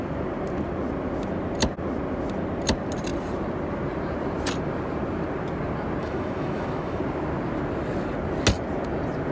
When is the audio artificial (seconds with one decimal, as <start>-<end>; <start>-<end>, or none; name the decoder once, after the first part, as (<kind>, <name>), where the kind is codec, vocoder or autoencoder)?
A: 6.0-7.0 (autoencoder, DAC-VAE)